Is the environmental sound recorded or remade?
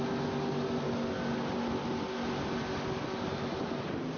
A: recorded